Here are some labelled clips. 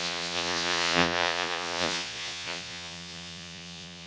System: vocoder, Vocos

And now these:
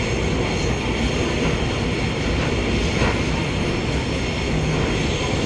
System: none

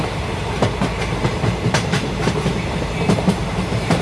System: vocoder, BigVGAN v2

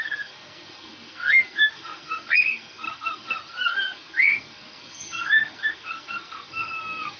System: codec, SNAC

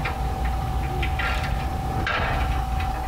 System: vocoder, BigVGAN v2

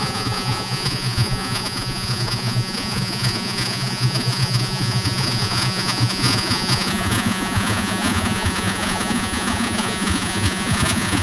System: vocoder, Vocos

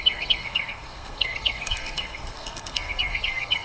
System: codec, SNAC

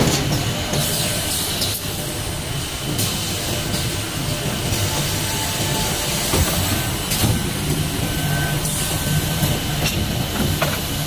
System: none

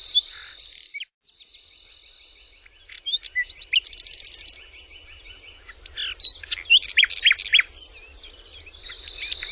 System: none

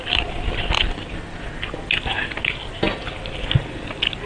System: none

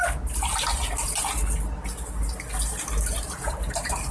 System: none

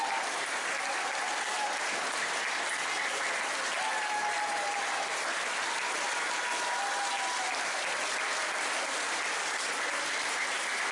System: none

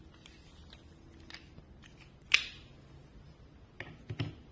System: none